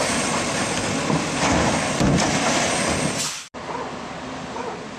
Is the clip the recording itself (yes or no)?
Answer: yes